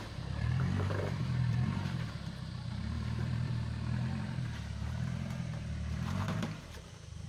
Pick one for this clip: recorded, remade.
remade